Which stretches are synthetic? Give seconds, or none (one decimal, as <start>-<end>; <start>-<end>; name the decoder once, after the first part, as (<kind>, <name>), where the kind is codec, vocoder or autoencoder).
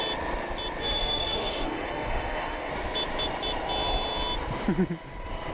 0.8-2.7 (autoencoder, DAC-VAE)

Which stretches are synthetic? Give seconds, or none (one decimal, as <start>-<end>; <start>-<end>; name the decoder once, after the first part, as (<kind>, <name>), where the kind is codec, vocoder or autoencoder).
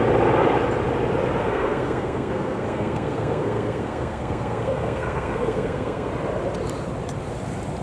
1.4-6.1 (codec, SNAC)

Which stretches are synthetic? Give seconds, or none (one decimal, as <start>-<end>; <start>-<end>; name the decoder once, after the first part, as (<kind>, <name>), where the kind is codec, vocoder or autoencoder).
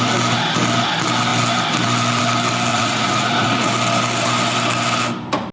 2.7-3.7 (vocoder, Vocos)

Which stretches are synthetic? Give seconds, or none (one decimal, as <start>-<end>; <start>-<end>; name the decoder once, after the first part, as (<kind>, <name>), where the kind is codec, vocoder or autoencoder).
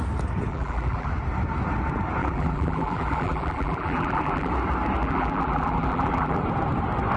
0.5-1.1 (vocoder, BigVGAN v2); 2.2-4.5; 5.0-6.4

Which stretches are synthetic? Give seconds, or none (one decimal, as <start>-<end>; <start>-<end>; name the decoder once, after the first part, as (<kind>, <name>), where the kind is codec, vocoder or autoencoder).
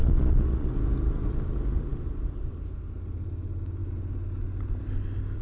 0.0-0.7 (vocoder, Vocos)